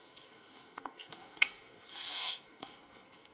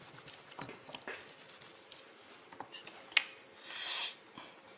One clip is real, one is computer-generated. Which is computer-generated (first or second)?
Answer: first